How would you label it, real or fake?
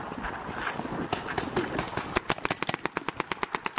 real